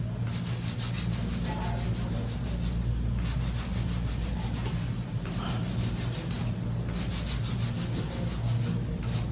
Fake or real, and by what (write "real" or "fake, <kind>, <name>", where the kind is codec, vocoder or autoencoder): real